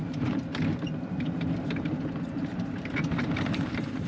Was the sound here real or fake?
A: fake